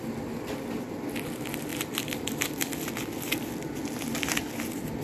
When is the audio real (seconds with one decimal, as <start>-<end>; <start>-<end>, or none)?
0.0-5.0